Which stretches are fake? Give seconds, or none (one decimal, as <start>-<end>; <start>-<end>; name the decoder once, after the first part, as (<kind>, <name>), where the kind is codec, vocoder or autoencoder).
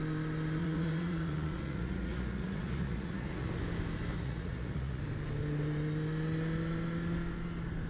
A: 0.6-3.5 (vocoder, Vocos); 4.1-5.0